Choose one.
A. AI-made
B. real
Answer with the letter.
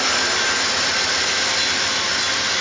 B